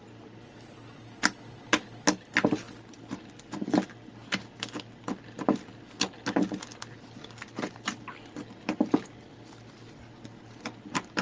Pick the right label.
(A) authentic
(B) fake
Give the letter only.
A